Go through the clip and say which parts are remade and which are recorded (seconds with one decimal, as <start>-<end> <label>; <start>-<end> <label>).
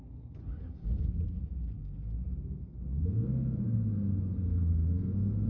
0.0-0.4 remade; 0.4-1.8 recorded; 1.8-5.5 remade